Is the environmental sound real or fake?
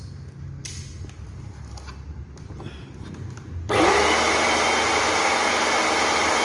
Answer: real